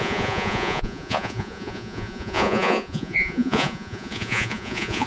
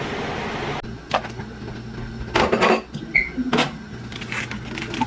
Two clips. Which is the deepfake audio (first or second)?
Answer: first